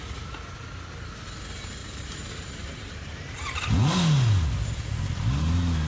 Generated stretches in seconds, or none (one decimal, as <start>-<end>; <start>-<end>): 1.8-3.6